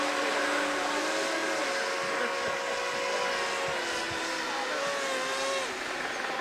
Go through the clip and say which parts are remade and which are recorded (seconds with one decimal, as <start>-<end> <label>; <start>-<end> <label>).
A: 0.0-6.4 recorded